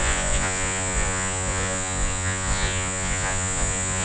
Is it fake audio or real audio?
fake